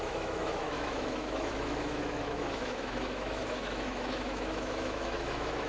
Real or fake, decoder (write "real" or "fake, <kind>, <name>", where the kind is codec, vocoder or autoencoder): fake, autoencoder, DAC-VAE